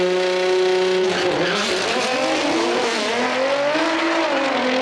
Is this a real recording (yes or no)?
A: yes